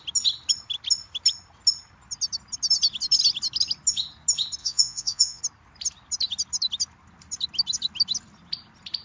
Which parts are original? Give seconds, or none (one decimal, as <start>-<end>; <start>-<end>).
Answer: 0.0-4.6; 5.4-9.0